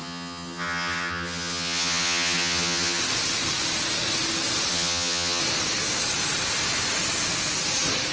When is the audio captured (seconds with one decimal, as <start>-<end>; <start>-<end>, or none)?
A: 3.0-4.7; 5.4-8.1